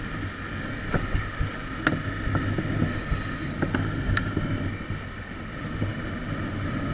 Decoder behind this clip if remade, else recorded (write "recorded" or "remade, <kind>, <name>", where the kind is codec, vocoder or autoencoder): recorded